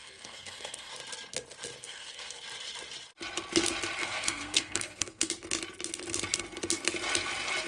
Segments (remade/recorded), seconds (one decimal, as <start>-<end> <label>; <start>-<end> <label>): 0.0-0.9 remade; 0.9-1.8 recorded; 1.8-2.4 remade; 2.4-4.0 recorded; 4.0-5.3 remade; 5.3-7.7 recorded